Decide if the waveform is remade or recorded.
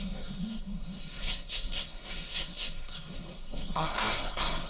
remade